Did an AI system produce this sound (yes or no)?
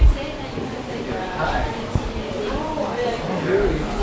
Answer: no